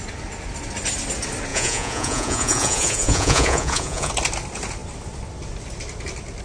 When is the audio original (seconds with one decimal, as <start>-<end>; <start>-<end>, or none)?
0.0-1.5; 4.1-6.4